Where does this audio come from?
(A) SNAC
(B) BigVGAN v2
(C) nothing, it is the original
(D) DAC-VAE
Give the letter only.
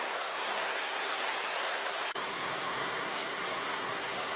A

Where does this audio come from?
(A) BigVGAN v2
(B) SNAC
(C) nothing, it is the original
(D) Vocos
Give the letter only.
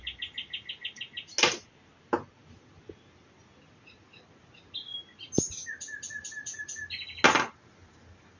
C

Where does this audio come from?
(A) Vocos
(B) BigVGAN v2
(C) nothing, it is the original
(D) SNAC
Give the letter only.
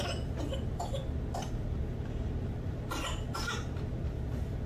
C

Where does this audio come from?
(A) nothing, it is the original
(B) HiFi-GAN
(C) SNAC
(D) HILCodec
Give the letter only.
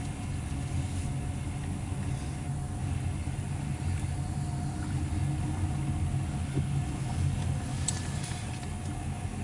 A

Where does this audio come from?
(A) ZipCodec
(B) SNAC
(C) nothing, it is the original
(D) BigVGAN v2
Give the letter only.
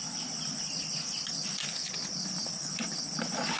C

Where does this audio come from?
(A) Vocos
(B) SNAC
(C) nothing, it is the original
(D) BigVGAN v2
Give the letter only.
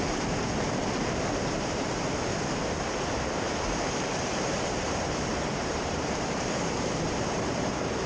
D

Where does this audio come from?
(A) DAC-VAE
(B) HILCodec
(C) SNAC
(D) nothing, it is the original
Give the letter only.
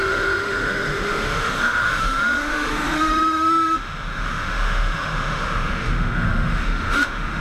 A